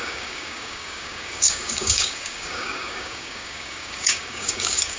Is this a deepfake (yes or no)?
yes